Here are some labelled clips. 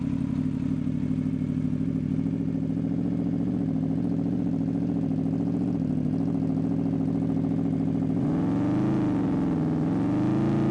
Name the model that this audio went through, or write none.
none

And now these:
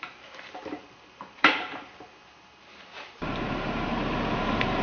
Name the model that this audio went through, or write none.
vocoder, BigVGAN v2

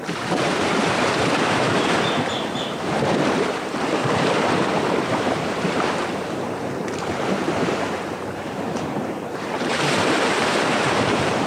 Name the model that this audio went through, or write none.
vocoder, BigVGAN v2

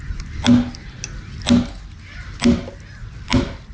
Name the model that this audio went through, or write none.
none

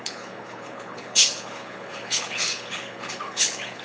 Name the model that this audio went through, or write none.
codec, HILCodec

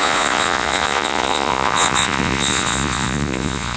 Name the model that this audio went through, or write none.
vocoder, Vocos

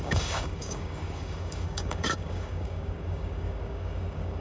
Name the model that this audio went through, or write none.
codec, DAC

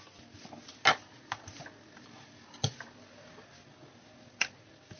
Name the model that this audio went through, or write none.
none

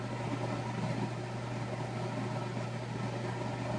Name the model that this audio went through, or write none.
none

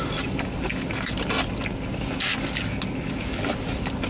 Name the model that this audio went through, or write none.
none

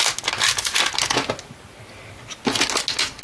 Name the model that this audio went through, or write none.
none